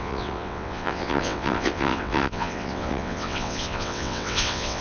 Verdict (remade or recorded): remade